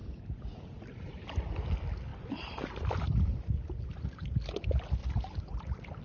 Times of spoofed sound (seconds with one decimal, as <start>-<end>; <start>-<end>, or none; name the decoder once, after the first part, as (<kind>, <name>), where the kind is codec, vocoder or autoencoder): 0.0-0.8 (vocoder, Vocos)

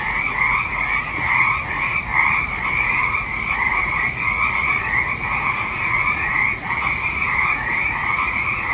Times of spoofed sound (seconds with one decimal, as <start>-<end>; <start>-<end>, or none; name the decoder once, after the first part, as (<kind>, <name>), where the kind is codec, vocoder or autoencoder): 0.0-2.1 (vocoder, Vocos); 2.7-8.7

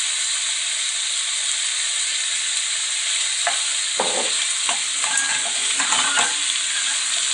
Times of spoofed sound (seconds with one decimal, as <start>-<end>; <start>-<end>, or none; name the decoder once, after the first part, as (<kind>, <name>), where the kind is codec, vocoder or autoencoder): 5.3-6.1 (vocoder, Vocos)

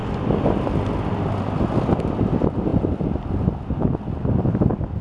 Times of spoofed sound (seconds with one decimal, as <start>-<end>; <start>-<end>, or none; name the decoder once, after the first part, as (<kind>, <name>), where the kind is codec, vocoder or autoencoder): none

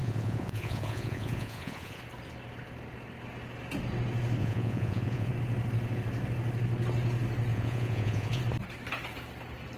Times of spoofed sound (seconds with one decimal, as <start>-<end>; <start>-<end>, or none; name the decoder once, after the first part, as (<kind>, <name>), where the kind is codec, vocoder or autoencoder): 0.0-2.0 (vocoder, Vocos); 4.4-5.3; 7.5-8.4

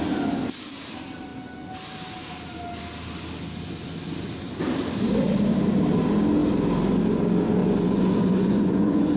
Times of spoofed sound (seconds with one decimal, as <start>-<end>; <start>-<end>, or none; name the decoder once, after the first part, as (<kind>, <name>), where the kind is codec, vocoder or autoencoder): 7.6-9.2 (vocoder, Vocos)

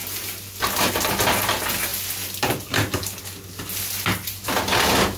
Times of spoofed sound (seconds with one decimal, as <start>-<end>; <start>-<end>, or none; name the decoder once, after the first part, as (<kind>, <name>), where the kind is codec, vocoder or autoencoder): none